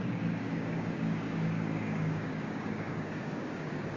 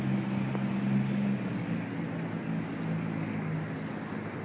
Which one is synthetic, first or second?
first